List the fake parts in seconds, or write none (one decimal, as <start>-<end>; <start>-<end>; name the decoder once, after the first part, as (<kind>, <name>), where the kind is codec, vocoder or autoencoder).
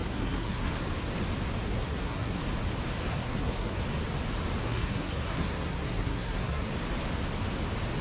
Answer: 0.0-0.7 (codec, SNAC); 1.6-2.4; 3.1-3.8; 4.6-6.7